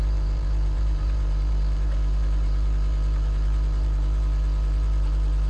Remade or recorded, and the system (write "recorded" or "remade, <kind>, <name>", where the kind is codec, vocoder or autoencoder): remade, vocoder, BigVGAN v2